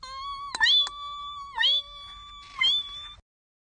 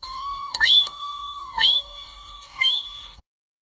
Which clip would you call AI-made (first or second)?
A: second